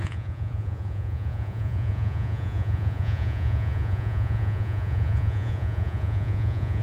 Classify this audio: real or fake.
fake